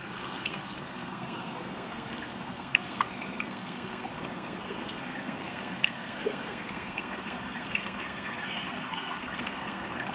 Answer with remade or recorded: remade